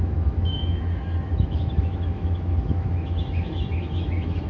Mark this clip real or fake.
fake